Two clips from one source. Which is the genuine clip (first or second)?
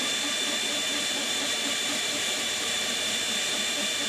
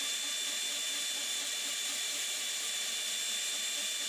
second